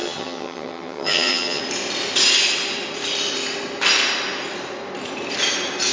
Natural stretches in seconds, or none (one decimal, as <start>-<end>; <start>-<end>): 1.6-5.9